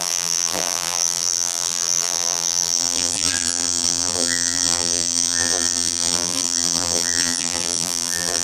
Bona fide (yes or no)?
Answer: no